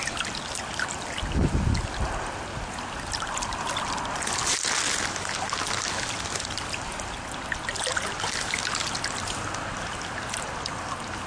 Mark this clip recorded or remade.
recorded